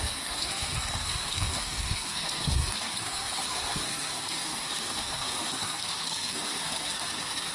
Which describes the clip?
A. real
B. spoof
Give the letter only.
B